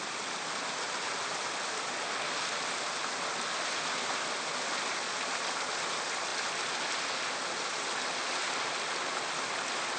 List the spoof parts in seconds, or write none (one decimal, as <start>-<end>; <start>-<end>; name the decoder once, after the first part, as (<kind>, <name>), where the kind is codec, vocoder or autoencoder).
none